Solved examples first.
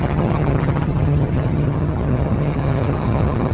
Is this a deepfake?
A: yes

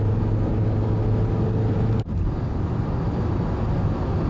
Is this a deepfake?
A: no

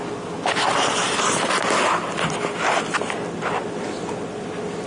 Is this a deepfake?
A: no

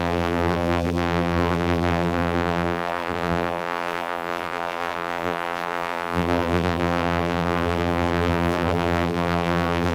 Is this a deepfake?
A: yes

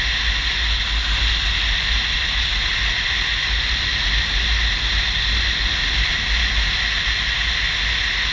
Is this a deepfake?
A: no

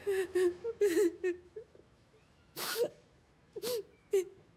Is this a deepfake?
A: yes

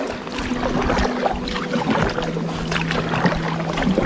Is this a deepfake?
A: no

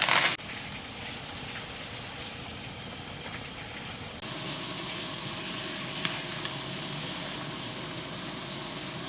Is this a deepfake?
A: no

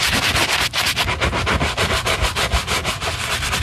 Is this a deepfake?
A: yes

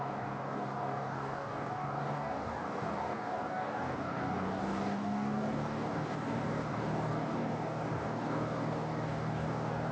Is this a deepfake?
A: yes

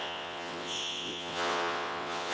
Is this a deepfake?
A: yes